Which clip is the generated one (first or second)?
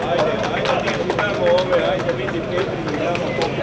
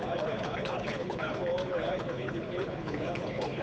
second